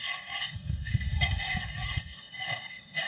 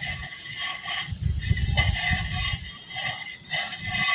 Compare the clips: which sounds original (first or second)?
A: second